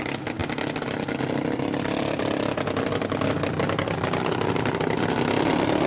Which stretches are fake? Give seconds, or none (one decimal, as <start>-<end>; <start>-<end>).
none

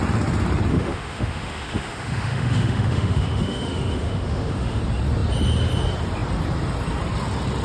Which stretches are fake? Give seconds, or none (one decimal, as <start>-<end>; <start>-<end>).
0.7-4.8

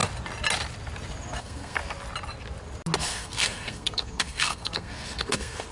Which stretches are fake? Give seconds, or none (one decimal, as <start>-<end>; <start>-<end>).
1.4-1.8; 3.0-5.7